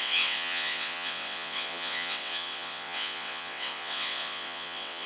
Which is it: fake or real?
fake